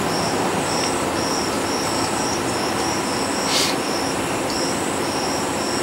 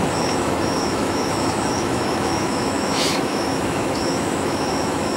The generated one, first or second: second